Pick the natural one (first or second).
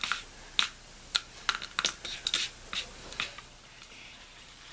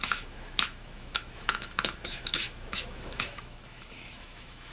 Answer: first